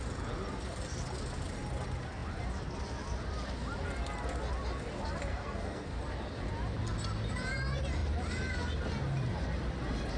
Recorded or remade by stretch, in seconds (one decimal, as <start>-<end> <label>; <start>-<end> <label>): 0.0-5.3 recorded; 5.3-6.0 remade; 6.0-10.2 recorded

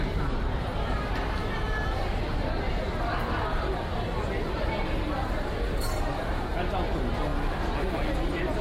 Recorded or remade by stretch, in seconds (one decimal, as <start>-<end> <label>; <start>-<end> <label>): 0.0-8.6 recorded